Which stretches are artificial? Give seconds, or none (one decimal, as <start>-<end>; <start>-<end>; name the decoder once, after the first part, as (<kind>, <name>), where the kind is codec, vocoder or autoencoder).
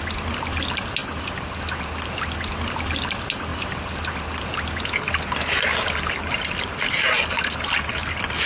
none